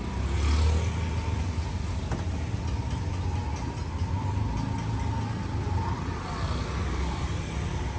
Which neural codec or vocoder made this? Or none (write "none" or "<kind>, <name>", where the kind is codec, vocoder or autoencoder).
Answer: none